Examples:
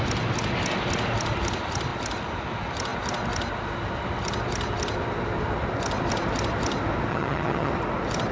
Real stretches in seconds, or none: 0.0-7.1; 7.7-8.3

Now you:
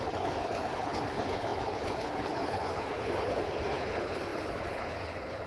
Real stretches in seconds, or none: none

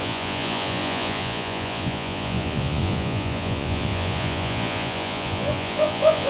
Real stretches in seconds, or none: none

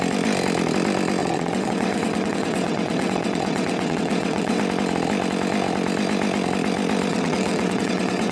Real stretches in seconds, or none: 0.0-1.2; 4.6-7.1